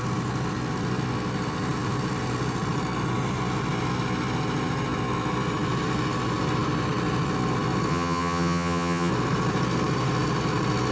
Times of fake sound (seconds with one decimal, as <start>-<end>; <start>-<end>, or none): 7.9-9.1